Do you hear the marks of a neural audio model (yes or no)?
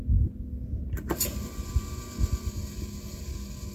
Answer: no